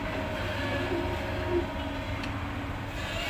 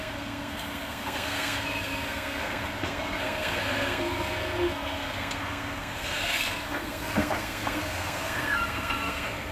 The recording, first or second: first